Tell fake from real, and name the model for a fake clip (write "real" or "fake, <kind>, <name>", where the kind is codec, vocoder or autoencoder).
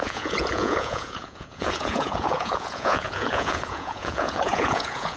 fake, vocoder, Vocos